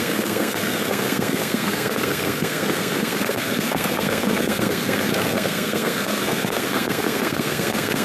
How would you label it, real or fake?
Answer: fake